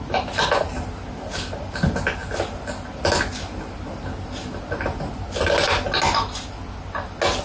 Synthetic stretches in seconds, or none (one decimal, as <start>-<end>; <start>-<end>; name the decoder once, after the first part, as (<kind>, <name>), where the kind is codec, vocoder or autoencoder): none